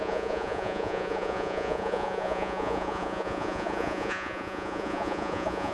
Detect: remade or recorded remade